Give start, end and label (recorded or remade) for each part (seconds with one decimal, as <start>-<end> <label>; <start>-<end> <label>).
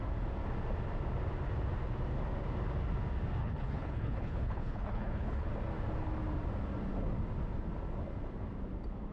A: 0.0-3.4 recorded; 3.4-5.5 remade; 5.5-9.1 recorded